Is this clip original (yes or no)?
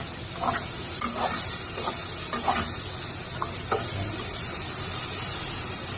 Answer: yes